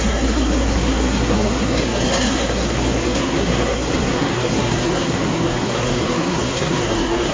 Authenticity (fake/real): fake